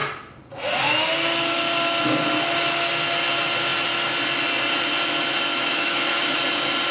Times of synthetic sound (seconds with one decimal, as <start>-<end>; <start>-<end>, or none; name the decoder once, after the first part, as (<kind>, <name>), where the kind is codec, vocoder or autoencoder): 5.5-6.4 (autoencoder, DAC-VAE)